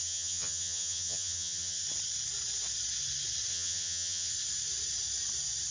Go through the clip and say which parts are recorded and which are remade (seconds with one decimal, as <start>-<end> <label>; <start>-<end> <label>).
0.0-1.8 remade; 1.8-3.5 recorded; 3.5-4.3 remade; 4.3-5.7 recorded